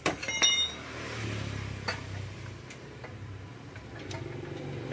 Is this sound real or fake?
real